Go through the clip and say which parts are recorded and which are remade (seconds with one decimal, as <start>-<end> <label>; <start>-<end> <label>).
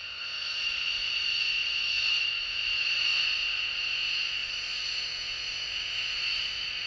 0.0-6.9 recorded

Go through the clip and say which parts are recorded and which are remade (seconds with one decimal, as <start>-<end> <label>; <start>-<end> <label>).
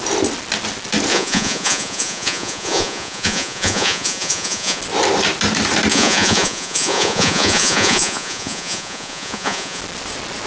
0.0-1.1 recorded; 1.1-4.8 remade; 4.8-5.9 recorded; 5.9-9.8 remade; 9.8-10.5 recorded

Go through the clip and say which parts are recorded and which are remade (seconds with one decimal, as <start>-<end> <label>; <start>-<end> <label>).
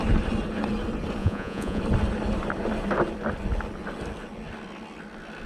0.0-1.2 recorded; 1.2-1.8 remade; 1.8-5.5 recorded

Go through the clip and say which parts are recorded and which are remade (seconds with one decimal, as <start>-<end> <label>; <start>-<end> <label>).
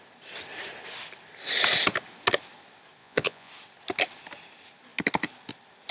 0.0-3.0 recorded; 3.0-3.5 remade; 3.5-5.9 recorded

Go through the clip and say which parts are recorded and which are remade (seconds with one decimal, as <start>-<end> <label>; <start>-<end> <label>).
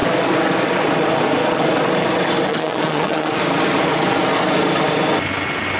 0.0-2.5 recorded; 2.5-3.4 remade; 3.4-5.8 recorded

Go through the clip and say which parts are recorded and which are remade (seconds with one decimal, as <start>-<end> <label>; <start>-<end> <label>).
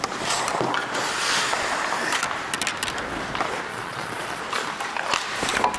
0.0-3.7 recorded; 3.7-4.4 remade; 4.4-5.8 recorded